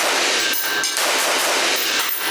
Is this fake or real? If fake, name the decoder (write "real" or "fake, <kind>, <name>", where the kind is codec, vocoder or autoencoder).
real